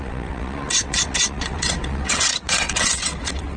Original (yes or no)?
no